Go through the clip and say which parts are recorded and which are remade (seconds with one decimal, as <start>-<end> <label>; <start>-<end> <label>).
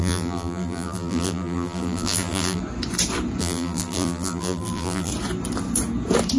0.0-2.6 remade; 2.6-3.4 recorded; 3.4-5.1 remade; 5.1-6.4 recorded